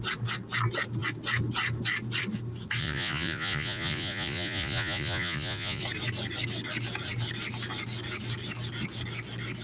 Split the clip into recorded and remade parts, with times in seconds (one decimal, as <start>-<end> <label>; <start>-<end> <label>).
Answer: 0.0-2.8 recorded; 2.8-5.8 remade; 5.8-9.6 recorded